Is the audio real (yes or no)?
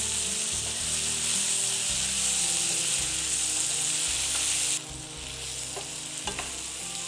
yes